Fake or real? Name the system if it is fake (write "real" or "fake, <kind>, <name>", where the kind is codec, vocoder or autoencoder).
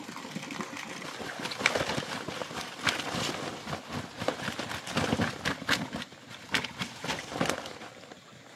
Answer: real